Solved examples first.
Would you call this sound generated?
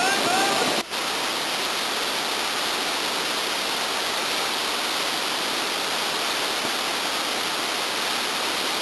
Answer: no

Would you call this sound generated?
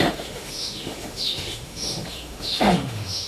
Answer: yes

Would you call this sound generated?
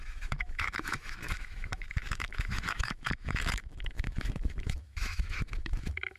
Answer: yes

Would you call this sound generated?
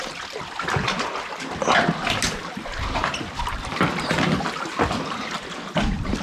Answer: no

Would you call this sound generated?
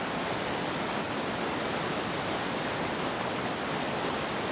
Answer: no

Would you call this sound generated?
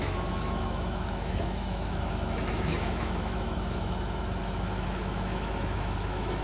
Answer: yes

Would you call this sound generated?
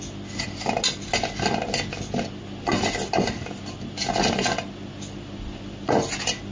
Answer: no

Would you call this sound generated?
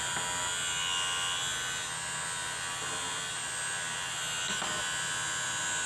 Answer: no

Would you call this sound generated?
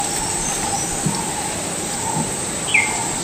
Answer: no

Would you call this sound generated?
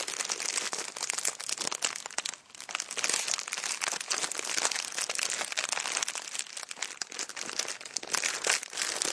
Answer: no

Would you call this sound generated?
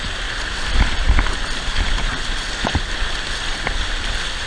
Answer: no